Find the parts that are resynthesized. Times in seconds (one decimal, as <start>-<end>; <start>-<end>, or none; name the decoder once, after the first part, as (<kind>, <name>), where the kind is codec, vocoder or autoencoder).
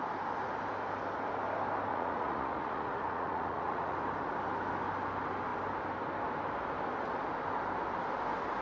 1.9-4.0 (vocoder, Vocos)